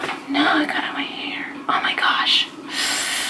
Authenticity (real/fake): real